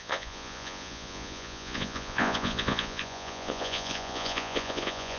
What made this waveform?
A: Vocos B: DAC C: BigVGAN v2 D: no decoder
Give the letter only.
A